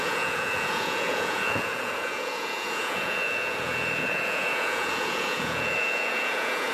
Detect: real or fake fake